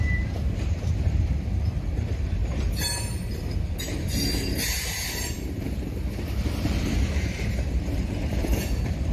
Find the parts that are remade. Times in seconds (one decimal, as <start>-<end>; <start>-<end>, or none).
0.0-2.4; 3.0-9.1

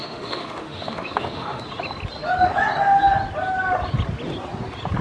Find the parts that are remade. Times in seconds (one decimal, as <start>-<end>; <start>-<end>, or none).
0.0-1.6